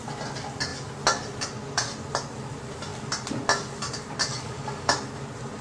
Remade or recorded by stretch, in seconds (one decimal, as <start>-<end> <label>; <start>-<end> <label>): 0.0-4.3 recorded; 4.3-4.9 remade; 4.9-5.6 recorded